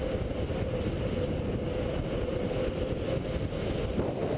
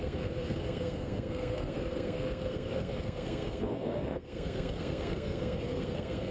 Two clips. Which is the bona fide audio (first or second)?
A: first